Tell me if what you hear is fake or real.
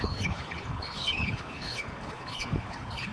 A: fake